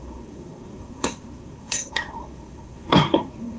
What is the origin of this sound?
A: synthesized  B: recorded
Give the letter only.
A